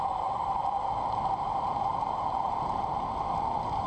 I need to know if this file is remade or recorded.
recorded